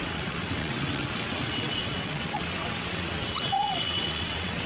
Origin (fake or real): fake